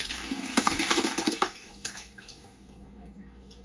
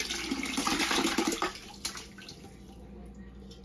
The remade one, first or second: first